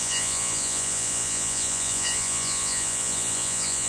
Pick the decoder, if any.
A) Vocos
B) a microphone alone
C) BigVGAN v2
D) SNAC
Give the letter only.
A